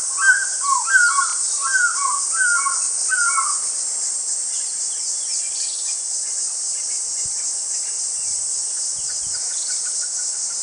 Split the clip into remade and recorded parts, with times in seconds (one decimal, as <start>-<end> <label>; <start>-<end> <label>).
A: 0.0-1.3 remade; 1.3-3.1 recorded; 3.1-10.6 remade